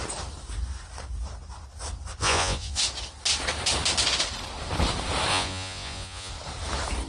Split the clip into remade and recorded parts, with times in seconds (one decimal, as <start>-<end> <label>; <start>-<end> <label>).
0.0-2.2 recorded; 2.2-2.8 remade; 2.8-5.3 recorded; 5.3-6.3 remade; 6.3-7.1 recorded